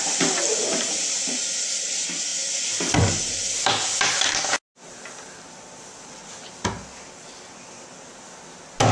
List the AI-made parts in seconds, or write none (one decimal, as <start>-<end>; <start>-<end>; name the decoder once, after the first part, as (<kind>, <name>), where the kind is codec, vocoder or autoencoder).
none